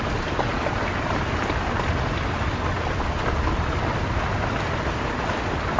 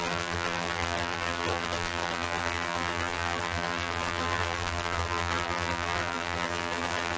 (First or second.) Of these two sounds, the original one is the first